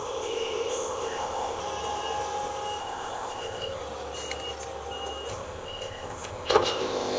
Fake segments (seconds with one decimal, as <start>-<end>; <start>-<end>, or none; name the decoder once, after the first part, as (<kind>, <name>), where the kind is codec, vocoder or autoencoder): 0.0-1.6 (codec, ZipCodec); 2.8-3.8; 5.3-7.2